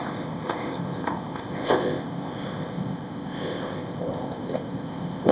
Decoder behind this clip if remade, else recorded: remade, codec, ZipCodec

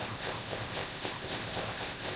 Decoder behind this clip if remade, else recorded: remade, codec, ZipCodec